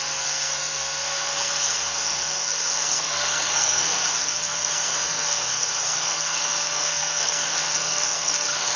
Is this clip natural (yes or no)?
no